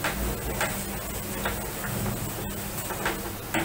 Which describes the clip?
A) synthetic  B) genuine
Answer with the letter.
B